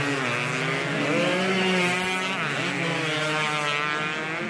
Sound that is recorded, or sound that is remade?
recorded